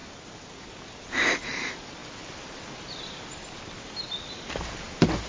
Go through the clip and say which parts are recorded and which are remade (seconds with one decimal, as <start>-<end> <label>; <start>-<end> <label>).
0.0-5.3 recorded